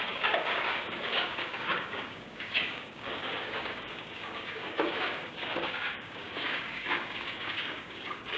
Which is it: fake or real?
fake